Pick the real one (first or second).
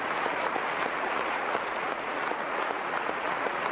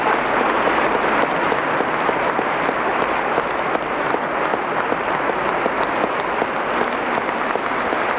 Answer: second